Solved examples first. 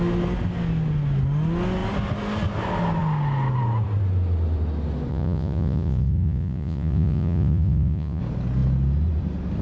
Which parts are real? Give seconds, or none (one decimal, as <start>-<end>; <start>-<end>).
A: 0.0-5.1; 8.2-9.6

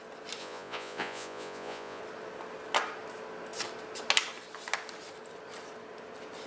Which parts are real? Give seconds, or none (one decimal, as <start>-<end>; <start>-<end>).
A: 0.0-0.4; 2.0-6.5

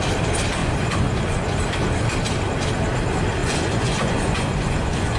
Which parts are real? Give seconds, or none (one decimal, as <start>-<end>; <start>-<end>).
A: 0.0-0.6; 1.6-3.4